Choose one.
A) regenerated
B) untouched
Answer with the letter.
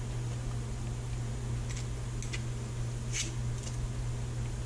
B